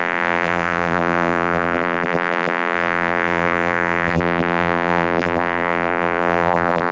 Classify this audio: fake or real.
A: fake